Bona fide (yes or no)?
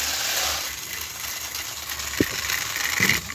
yes